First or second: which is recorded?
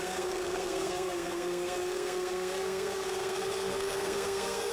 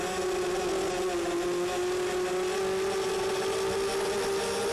second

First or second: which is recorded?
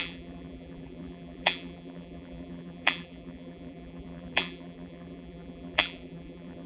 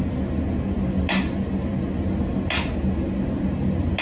second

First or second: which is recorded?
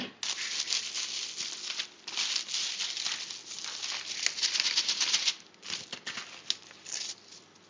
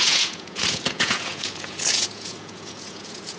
first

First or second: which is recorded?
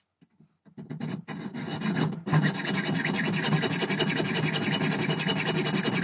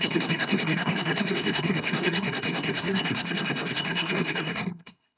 first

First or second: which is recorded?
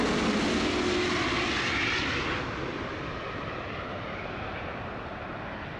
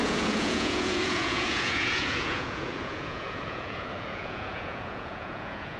first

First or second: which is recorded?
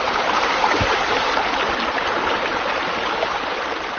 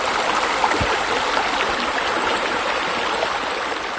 second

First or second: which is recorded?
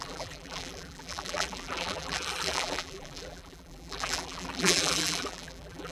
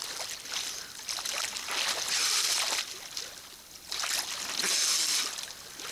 second